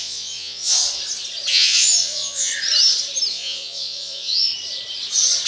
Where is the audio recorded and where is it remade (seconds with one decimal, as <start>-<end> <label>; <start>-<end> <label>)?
0.0-0.8 remade; 0.8-1.5 recorded; 1.5-2.5 remade; 2.5-3.3 recorded; 3.3-4.5 remade; 4.5-5.5 recorded